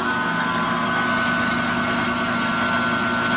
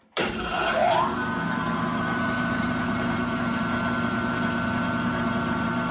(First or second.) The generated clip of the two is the second